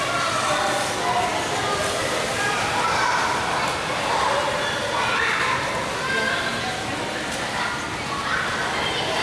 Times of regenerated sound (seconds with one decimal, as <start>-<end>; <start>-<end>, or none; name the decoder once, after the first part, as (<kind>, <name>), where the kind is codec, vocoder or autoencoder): none